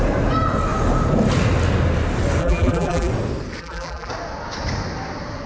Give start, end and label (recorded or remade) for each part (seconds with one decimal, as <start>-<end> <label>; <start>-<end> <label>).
0.0-2.4 recorded; 2.4-3.1 remade; 3.1-3.6 recorded; 3.6-4.1 remade; 4.1-5.5 recorded